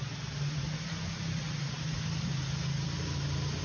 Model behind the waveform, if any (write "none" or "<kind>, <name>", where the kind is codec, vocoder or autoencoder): none